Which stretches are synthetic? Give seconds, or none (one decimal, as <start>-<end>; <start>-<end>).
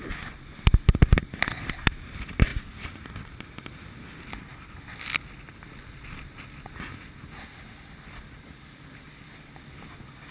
none